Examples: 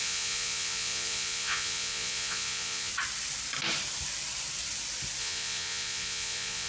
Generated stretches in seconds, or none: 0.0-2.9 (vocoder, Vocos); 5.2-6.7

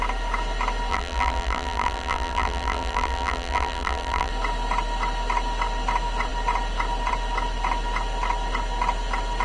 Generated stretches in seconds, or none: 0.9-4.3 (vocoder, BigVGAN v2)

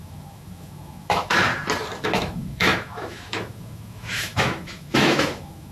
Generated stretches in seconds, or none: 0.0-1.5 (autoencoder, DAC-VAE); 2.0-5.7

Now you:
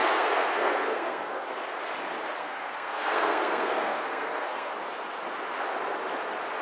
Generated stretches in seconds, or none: 0.0-1.5 (codec, SNAC); 2.4-4.7

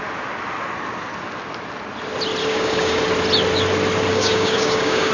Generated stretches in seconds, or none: 2.4-3.0 (codec, DAC); 4.1-5.1

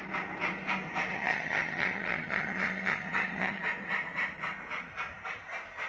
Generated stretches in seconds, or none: 1.1-3.6 (vocoder, HiFi-GAN)